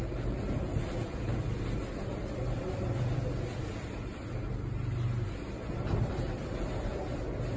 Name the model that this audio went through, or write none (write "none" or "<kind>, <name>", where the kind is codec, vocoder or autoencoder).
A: none